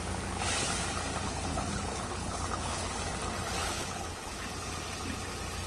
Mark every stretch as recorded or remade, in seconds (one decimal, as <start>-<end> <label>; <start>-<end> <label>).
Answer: 0.0-1.5 recorded; 1.5-2.8 remade; 2.8-3.6 recorded; 3.6-4.3 remade; 4.3-5.7 recorded